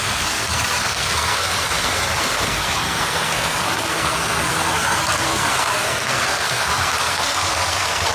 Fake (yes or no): yes